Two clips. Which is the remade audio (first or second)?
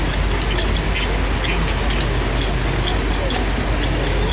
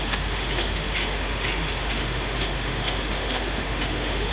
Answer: second